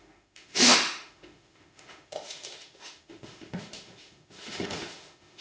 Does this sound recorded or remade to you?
remade